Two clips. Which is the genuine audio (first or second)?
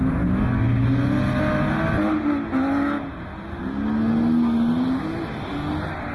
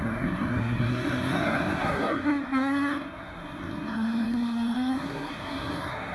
first